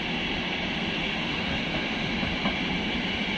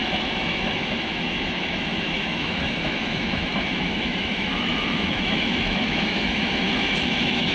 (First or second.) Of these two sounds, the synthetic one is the second